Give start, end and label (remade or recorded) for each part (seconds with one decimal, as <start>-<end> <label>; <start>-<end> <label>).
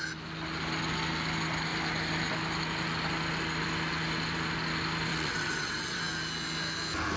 0.0-5.1 recorded; 5.1-6.0 remade; 6.0-7.2 recorded